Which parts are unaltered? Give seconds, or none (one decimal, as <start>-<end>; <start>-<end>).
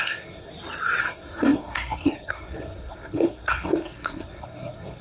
0.5-1.0